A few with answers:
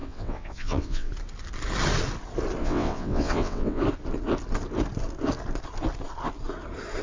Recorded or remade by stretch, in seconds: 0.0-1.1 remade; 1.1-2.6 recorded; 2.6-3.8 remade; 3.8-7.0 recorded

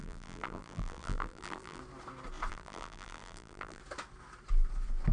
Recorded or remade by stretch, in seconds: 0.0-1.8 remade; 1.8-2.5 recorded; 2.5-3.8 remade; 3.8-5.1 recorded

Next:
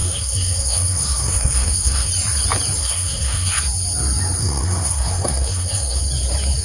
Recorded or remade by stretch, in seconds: 0.0-2.1 remade; 2.1-2.8 recorded; 2.8-3.6 remade; 3.6-4.4 recorded; 4.4-6.0 remade; 6.0-6.6 recorded

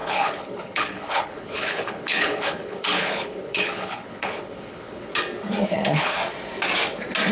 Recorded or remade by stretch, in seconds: 0.0-5.1 remade; 5.1-5.7 recorded; 5.7-6.2 remade; 6.2-7.3 recorded

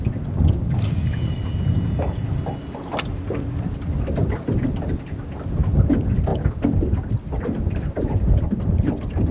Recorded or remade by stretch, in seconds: 0.0-9.3 recorded

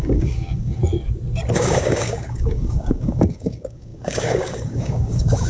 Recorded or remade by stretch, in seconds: 0.0-0.8 remade; 0.8-1.5 recorded; 1.5-5.5 remade